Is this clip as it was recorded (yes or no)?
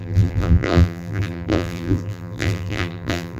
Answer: no